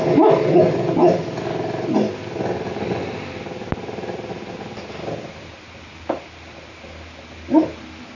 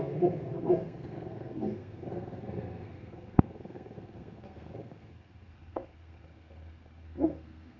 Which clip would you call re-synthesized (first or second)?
second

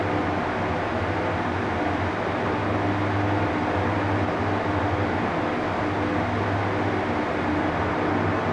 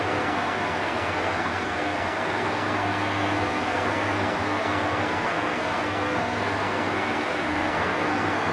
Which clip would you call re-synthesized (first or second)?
second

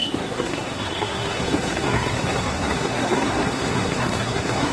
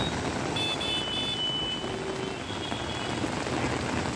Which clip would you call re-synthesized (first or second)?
first